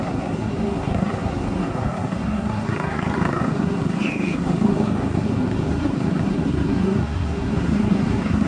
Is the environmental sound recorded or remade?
remade